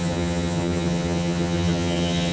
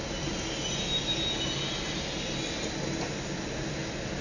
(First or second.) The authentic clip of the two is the second